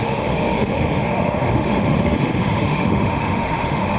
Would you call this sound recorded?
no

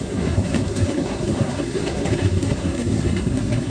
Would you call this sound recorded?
no